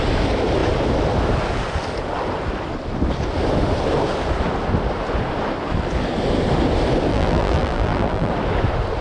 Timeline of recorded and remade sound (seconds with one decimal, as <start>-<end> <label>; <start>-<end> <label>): 0.0-7.1 recorded; 7.1-8.3 remade; 8.3-9.0 recorded